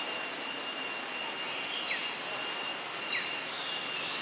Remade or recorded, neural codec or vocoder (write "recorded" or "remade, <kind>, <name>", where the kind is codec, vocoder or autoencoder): recorded